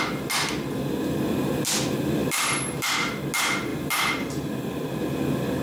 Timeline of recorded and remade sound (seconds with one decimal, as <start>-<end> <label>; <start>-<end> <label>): 0.0-2.2 recorded; 2.2-3.2 remade; 3.2-3.7 recorded; 3.7-4.9 remade; 4.9-5.6 recorded